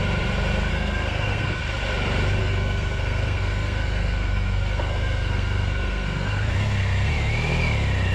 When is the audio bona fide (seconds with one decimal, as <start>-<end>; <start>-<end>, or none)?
0.0-0.7; 1.6-2.4; 7.1-8.1